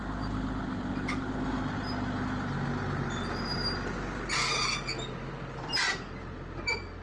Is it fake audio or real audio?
real